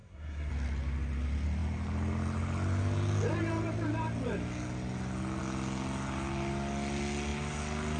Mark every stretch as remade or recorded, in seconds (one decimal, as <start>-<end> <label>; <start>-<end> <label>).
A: 0.0-0.5 remade; 0.5-8.0 recorded